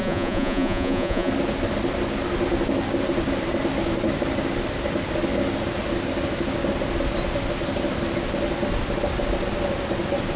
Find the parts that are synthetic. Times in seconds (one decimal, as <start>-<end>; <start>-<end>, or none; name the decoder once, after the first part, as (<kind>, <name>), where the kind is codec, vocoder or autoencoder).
0.0-1.3 (vocoder, Vocos)